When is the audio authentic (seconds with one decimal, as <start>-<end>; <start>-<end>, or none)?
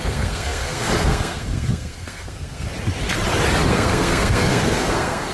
2.7-3.7